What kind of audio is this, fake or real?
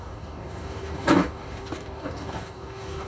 fake